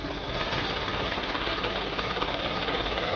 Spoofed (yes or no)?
yes